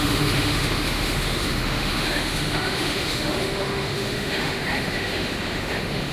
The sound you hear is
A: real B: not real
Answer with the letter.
B